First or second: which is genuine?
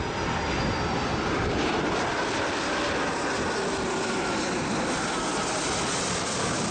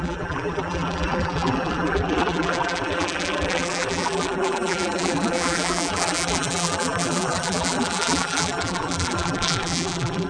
first